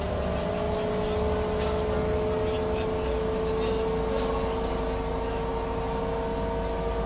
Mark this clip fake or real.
real